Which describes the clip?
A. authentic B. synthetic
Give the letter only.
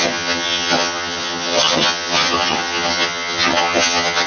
B